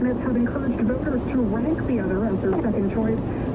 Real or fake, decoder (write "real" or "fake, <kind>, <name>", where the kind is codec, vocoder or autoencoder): real